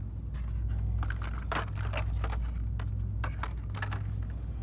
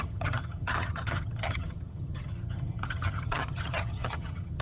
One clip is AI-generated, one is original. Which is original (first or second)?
first